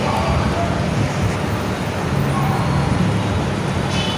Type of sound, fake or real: real